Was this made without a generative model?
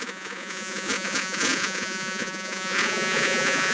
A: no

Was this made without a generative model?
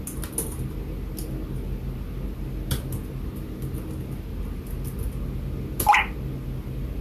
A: yes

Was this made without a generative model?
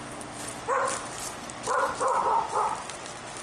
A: yes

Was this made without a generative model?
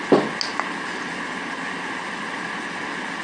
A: yes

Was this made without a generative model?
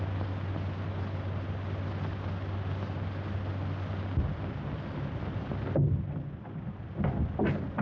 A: yes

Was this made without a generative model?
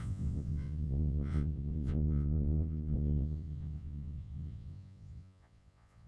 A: no